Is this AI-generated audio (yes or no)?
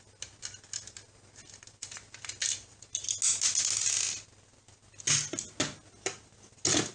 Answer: no